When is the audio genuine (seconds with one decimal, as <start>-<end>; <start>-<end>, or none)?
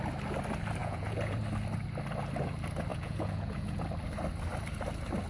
0.0-0.8; 1.4-2.9; 3.8-5.3